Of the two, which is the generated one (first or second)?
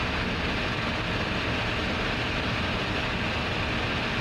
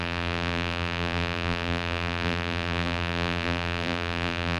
second